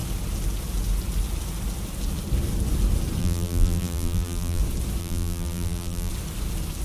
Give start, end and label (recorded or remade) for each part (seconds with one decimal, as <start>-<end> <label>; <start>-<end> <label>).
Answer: 0.0-3.2 recorded; 3.2-4.6 remade; 4.6-5.0 recorded; 5.0-6.1 remade; 6.1-6.8 recorded